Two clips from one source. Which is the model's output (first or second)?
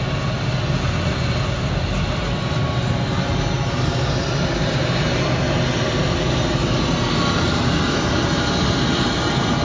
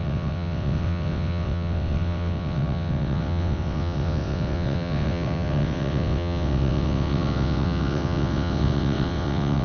second